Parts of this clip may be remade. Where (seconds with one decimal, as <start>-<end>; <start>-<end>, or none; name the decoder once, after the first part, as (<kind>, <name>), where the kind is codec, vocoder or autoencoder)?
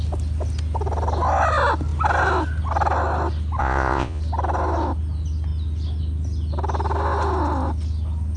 3.6-4.2 (vocoder, Vocos)